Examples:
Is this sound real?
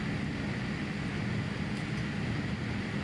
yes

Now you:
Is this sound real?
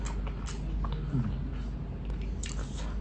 yes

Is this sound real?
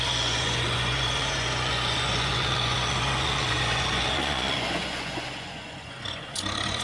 no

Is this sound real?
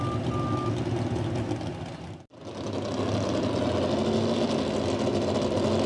yes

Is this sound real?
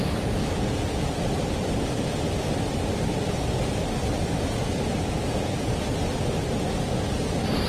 yes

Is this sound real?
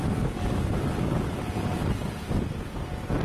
yes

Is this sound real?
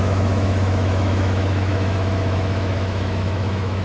no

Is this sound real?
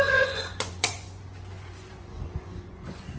no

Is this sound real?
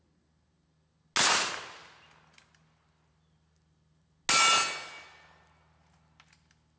yes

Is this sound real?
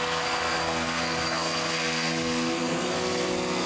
no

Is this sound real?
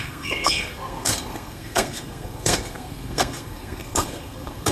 no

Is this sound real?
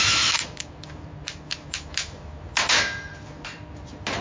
no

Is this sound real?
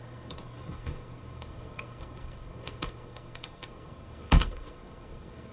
no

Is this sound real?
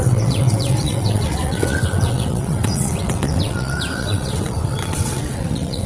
no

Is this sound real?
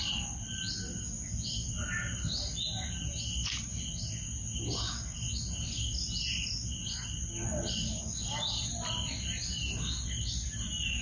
yes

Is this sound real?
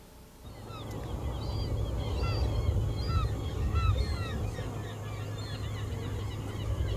yes